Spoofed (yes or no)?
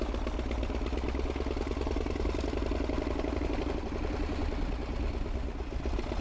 no